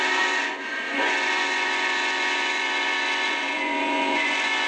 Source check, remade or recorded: remade